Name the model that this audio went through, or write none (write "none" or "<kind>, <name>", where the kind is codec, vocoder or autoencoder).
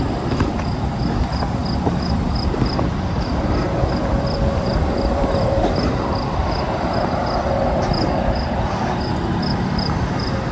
vocoder, BigVGAN v2